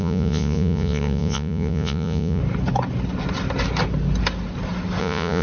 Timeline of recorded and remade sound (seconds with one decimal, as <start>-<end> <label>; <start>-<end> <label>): 0.0-2.4 remade; 2.4-5.0 recorded; 5.0-5.4 remade